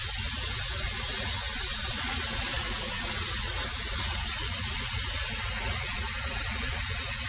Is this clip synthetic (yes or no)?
yes